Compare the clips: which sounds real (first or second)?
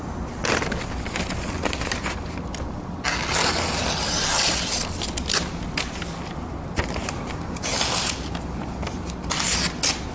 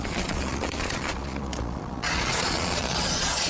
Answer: first